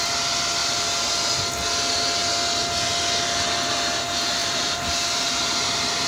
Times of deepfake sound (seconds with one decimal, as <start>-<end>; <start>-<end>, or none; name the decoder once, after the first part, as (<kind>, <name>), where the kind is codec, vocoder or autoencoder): 0.6-1.1 (vocoder, BigVGAN v2); 4.4-6.1